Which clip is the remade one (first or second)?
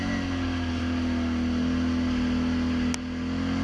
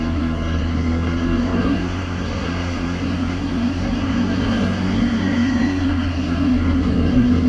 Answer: second